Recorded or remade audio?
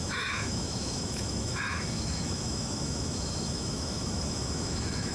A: remade